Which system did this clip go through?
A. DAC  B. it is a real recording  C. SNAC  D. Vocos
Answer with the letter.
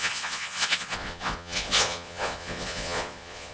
D